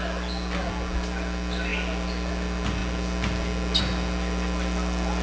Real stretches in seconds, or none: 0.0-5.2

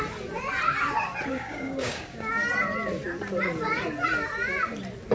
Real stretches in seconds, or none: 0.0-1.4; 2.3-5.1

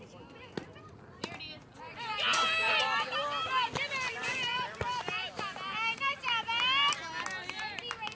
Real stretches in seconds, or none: 0.0-8.1

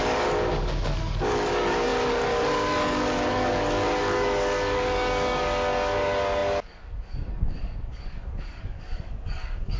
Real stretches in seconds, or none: none

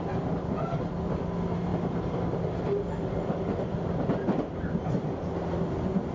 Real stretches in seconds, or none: 0.0-6.1